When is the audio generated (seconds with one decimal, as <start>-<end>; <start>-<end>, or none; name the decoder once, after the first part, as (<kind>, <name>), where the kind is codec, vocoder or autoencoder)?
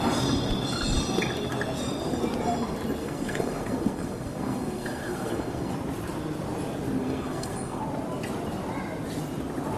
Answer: 3.0-5.7 (codec, SNAC); 7.0-7.8